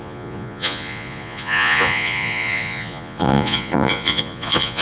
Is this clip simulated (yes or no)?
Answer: yes